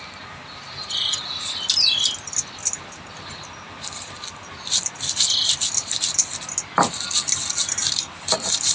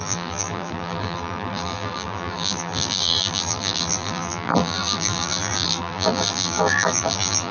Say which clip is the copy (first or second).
second